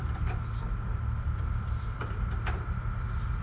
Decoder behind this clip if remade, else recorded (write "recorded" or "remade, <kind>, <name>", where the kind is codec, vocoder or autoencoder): remade, vocoder, BigVGAN v2